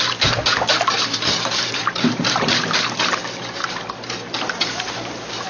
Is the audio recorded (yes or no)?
yes